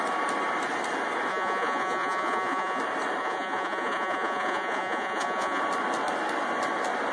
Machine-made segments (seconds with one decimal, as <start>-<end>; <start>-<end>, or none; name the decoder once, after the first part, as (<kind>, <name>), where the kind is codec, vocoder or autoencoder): 1.3-2.8 (vocoder, Vocos); 3.2-5.6

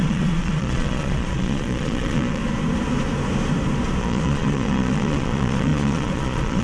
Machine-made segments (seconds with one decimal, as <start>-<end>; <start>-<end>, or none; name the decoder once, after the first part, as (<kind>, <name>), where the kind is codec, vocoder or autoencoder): 0.0-2.4 (vocoder, Vocos); 4.0-6.6